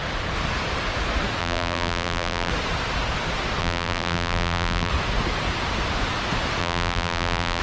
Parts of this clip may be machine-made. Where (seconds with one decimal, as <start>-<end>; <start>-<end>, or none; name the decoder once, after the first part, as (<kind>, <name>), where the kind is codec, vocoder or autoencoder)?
1.4-2.5 (vocoder, BigVGAN v2); 3.6-4.9; 6.6-7.6